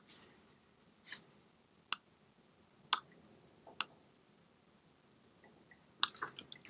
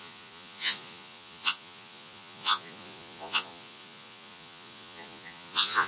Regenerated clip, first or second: second